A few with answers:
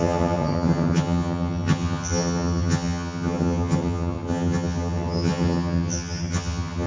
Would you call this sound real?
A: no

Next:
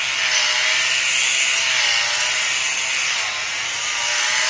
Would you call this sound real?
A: yes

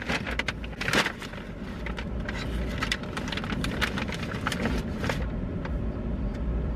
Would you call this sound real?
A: yes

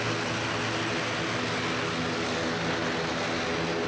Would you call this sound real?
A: yes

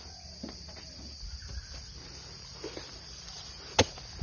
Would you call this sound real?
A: yes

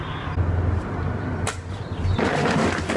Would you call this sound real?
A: yes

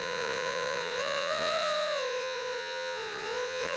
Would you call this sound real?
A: no